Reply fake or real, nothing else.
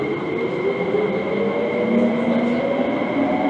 real